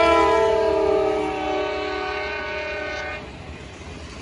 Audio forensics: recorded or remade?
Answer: recorded